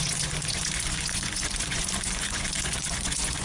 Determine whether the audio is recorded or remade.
remade